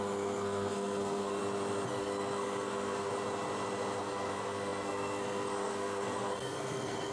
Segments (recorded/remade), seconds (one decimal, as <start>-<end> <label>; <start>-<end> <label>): 0.0-1.4 remade; 1.4-2.0 recorded; 2.0-3.1 remade; 3.1-4.0 recorded; 4.0-7.1 remade